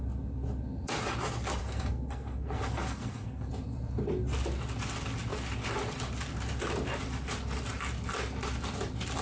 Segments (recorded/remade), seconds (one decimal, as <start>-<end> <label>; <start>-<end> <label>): 0.0-1.6 recorded; 1.6-3.5 remade; 3.5-9.2 recorded